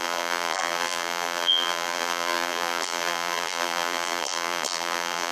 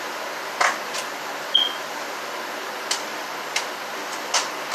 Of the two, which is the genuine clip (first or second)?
second